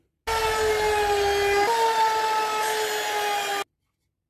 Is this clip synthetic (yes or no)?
no